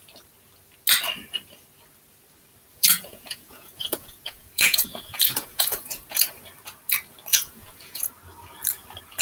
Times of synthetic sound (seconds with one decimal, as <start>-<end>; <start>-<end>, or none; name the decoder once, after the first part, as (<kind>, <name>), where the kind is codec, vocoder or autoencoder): 2.7-6.3 (vocoder, Vocos); 7.3-8.1